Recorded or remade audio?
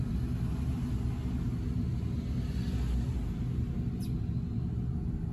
recorded